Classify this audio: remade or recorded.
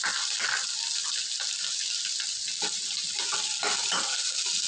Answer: recorded